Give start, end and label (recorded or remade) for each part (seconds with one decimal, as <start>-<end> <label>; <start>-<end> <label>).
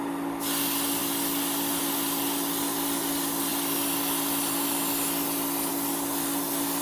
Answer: 0.0-6.8 recorded